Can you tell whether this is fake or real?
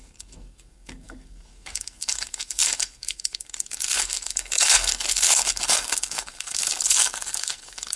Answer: fake